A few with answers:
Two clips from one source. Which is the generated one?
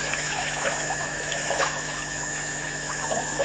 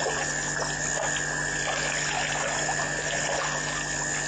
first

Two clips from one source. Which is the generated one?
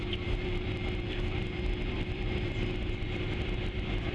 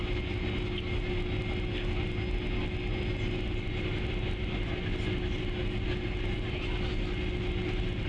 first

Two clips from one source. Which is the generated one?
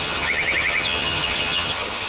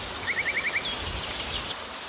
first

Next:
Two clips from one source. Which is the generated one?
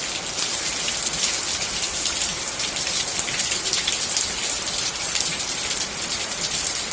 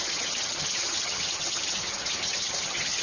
second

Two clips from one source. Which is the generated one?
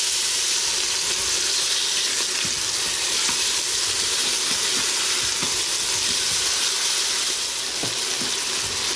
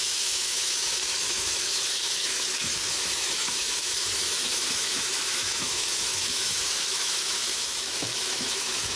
second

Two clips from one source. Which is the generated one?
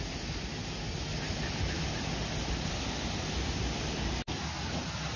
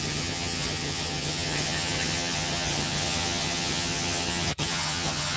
second